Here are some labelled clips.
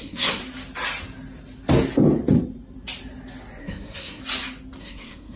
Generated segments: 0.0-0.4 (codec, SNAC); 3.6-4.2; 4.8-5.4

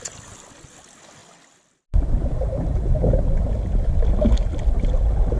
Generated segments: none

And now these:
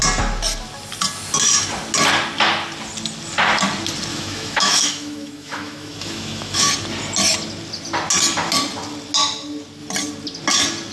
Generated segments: 4.1-6.7 (autoencoder, DAC-VAE)

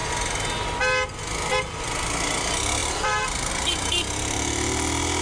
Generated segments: 2.8-3.5 (vocoder, BigVGAN v2)

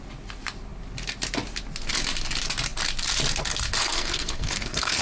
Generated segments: 3.8-5.0 (codec, SNAC)

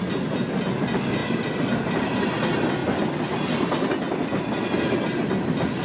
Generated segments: none

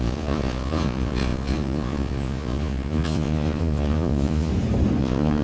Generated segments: 0.0-4.5 (vocoder, Vocos); 5.0-5.4